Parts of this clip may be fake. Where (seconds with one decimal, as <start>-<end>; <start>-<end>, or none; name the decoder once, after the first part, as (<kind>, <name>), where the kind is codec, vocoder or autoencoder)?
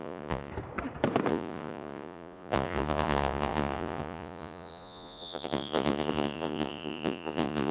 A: 0.0-0.5 (vocoder, Vocos); 1.3-7.7